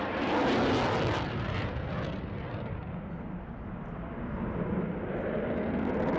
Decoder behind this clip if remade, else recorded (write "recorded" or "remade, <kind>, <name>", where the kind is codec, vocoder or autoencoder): recorded